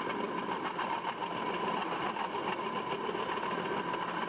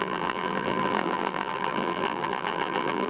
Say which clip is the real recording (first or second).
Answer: first